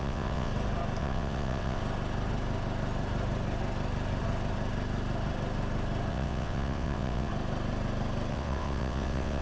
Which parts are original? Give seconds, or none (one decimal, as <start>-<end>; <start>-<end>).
0.5-1.0; 1.8-6.1; 7.3-8.3